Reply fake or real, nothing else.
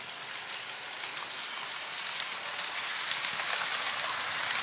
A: real